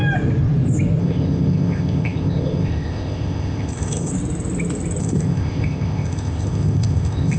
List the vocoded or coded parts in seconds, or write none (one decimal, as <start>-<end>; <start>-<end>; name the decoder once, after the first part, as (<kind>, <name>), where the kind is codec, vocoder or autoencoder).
1.0-4.1 (codec, ZipCodec); 5.0-7.4